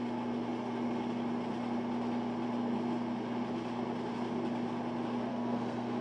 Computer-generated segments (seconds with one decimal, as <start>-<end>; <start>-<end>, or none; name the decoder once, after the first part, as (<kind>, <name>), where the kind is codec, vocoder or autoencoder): 5.3-6.0 (codec, SNAC)